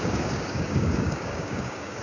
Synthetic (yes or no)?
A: yes